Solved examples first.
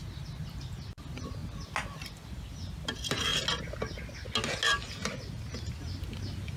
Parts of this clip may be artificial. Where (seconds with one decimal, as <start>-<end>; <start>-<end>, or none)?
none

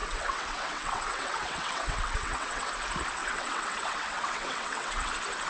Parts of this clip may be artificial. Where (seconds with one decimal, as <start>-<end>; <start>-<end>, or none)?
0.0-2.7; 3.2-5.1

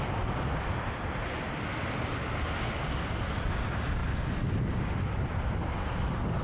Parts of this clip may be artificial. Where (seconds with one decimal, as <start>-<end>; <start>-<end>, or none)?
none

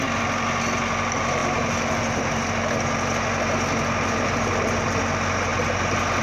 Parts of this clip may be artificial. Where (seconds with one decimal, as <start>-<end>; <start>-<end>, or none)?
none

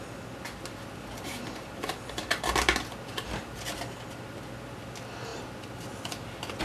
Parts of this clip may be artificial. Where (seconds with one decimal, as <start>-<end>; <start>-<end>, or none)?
none

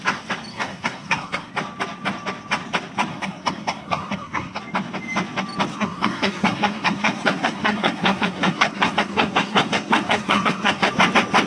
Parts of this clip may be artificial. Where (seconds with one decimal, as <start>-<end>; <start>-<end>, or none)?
0.5-1.5; 3.1-4.6; 5.7-10.9